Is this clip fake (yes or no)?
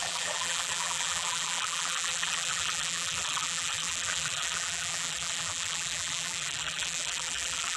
yes